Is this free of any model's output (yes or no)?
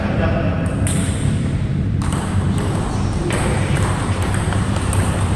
no